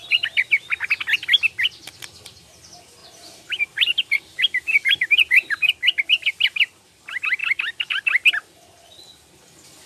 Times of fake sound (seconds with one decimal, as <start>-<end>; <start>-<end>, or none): 3.0-5.7